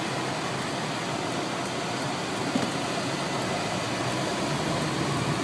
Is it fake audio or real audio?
real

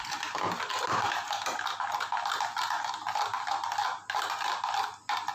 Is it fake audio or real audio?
real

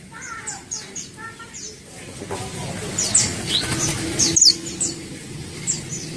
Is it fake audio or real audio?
real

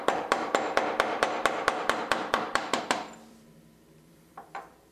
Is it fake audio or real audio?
fake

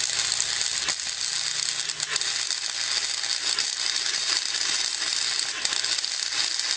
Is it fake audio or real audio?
real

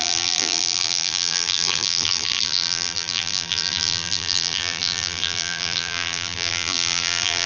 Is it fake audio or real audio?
fake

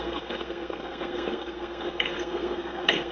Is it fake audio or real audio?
fake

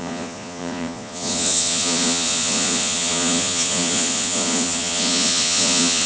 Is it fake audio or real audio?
fake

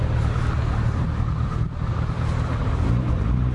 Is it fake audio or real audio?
real